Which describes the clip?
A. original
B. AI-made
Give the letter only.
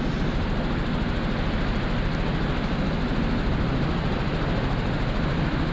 A